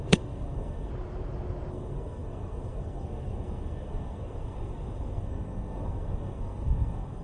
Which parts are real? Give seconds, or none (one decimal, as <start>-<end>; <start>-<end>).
0.9-1.7